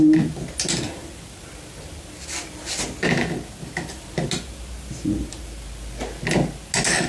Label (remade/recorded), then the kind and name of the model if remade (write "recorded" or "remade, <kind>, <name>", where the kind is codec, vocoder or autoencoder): recorded